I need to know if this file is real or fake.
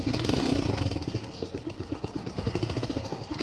fake